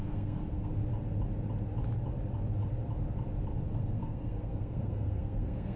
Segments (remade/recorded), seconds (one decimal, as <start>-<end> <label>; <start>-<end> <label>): 0.0-0.7 remade; 0.7-3.7 recorded; 3.7-5.8 remade